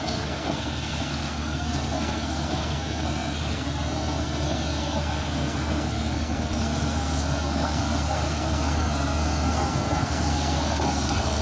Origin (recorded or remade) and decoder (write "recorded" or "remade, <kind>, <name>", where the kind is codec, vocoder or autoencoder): remade, codec, SNAC